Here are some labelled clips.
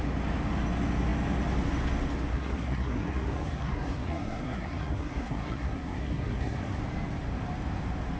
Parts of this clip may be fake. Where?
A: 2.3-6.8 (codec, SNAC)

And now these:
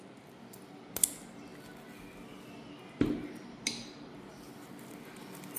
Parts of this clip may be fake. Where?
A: none

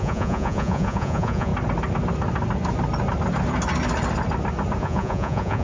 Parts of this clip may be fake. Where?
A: 0.0-1.5 (vocoder, Vocos); 4.8-5.6